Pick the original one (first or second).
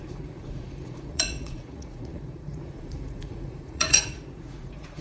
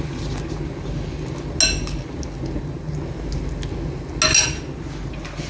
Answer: second